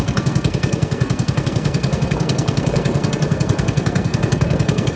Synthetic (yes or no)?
yes